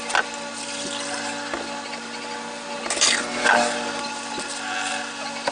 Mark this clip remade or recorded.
recorded